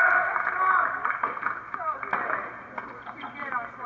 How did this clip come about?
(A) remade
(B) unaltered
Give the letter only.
B